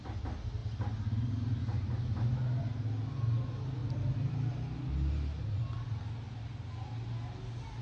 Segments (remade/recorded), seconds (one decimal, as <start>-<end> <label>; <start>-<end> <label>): 0.0-7.8 recorded